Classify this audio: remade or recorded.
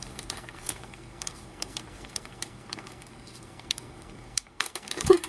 remade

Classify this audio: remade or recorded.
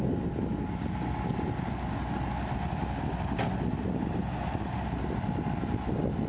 recorded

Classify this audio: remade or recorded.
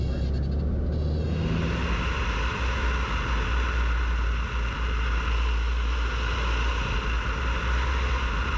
recorded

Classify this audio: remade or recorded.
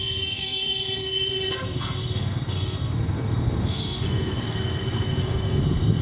remade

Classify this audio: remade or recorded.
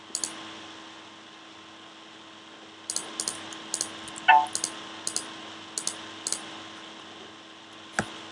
recorded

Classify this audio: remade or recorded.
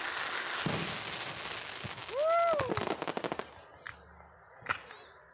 recorded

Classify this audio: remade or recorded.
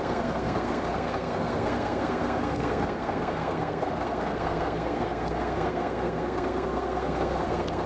remade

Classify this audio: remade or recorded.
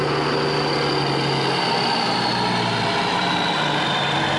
recorded